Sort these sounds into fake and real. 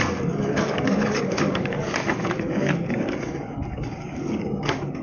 fake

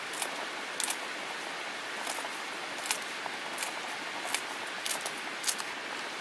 real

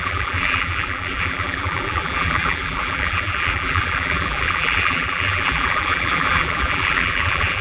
fake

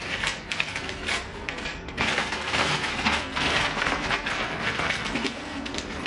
fake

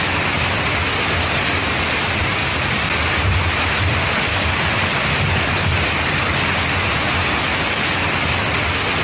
real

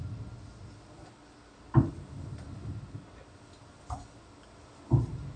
real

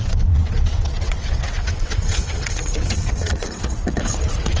fake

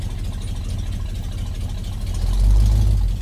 real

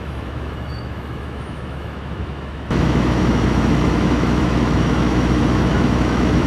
fake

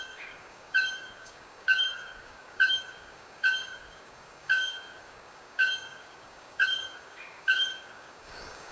fake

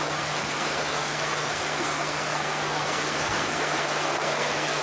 fake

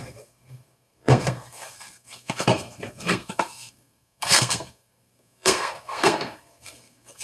fake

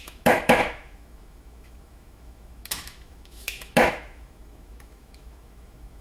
fake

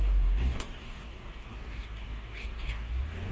fake